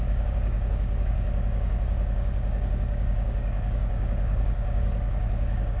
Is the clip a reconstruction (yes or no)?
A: yes